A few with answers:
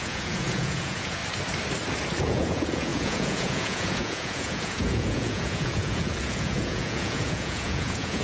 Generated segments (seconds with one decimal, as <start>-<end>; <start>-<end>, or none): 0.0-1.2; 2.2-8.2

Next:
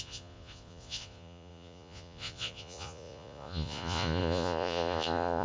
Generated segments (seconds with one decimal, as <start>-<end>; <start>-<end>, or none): 0.0-5.4

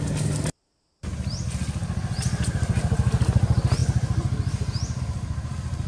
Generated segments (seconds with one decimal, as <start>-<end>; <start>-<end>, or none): none

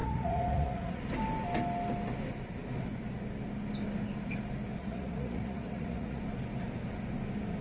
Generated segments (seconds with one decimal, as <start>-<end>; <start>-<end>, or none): 0.0-1.0; 4.8-6.2

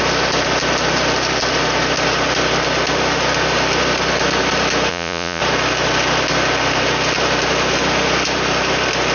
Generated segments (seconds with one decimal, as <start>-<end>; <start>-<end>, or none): 4.9-5.4

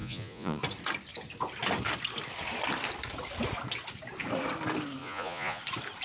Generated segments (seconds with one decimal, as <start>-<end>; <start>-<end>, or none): 0.0-0.6; 5.0-5.6

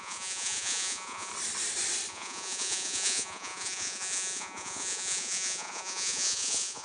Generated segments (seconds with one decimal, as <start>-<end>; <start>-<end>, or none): 0.0-1.3; 2.1-6.8